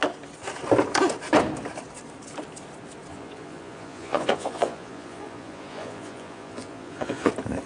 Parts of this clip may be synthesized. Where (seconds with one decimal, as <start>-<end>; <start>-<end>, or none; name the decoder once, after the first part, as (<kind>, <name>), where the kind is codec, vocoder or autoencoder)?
3.1-7.3 (vocoder, Vocos)